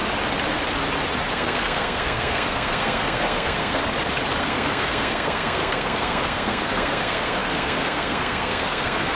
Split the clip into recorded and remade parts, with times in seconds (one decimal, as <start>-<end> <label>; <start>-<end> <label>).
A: 0.0-1.3 recorded; 1.3-3.8 remade; 3.8-4.4 recorded; 4.4-9.1 remade